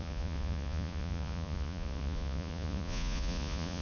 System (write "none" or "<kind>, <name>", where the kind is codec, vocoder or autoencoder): vocoder, Vocos